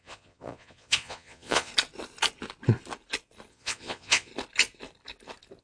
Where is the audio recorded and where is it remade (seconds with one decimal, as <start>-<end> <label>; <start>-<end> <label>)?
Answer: 0.0-1.7 remade; 1.7-3.5 recorded; 3.5-4.3 remade; 4.3-5.6 recorded